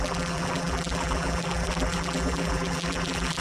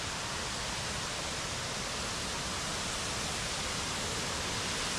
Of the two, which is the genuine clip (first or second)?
second